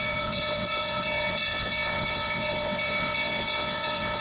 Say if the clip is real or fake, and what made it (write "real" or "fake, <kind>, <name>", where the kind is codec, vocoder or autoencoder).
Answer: fake, vocoder, WaveNeXt